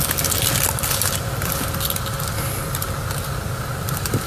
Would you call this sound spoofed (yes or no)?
no